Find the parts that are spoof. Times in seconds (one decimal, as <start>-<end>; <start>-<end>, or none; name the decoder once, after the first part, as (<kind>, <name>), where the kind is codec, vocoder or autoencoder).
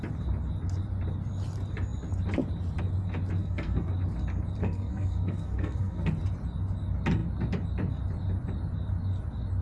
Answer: 3.4-3.9 (codec, SNAC); 4.6-6.1